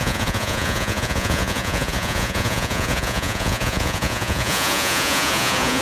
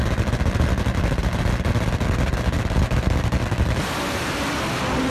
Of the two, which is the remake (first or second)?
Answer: first